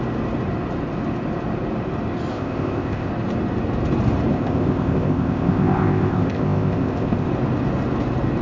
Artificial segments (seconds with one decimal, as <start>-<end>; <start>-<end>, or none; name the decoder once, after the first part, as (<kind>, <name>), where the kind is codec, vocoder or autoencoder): 2.3-3.1 (codec, ZipCodec); 4.3-7.3